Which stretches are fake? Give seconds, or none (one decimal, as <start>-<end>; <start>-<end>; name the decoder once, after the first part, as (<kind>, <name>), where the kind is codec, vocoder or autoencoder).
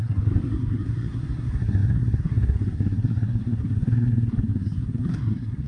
0.0-5.7 (codec, SNAC)